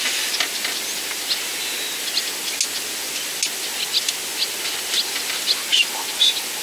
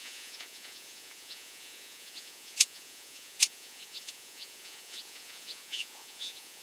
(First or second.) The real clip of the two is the first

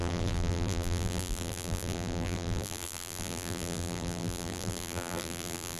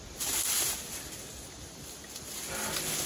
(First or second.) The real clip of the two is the second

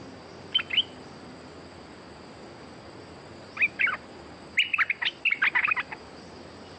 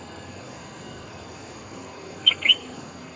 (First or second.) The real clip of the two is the first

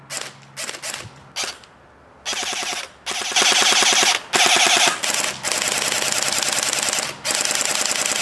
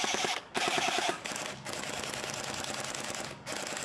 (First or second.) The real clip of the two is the first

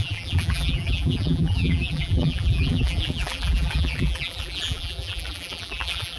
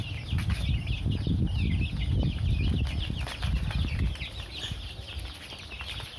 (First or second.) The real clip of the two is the second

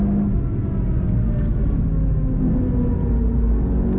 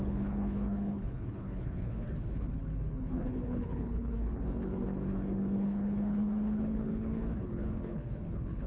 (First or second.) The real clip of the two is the first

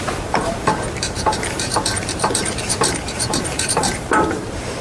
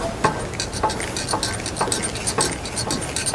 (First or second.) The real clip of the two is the second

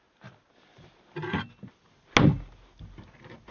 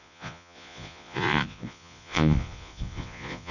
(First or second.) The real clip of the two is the first